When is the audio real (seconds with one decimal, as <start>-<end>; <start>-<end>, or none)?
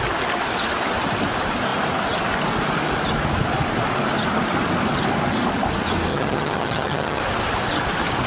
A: 0.0-6.1; 7.2-8.3